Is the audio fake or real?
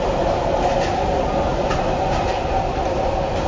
real